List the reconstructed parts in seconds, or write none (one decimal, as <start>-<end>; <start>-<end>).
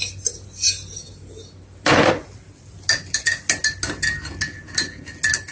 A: none